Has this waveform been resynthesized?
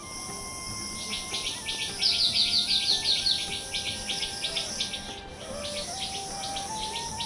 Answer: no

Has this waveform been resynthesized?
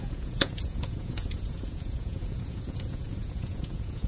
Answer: yes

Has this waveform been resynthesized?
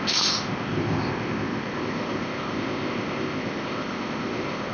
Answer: yes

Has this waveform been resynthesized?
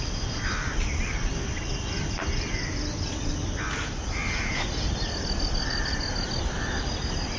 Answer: yes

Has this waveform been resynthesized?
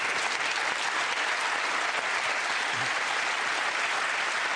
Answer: no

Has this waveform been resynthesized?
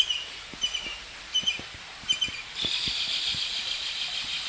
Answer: no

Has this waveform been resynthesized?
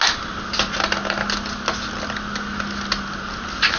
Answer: no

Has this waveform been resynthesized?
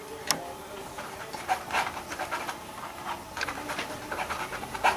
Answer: no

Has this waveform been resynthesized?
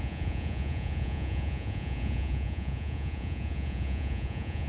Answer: yes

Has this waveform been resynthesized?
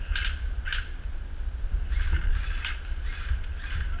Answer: no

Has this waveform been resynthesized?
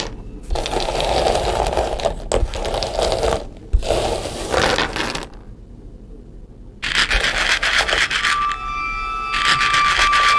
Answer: no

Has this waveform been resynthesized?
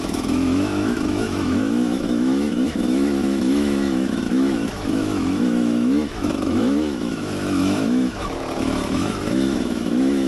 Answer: yes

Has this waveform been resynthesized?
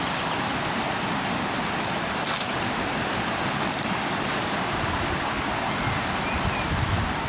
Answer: yes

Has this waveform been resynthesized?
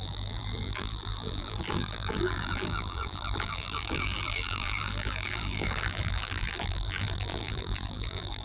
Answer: yes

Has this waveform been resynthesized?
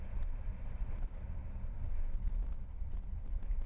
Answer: no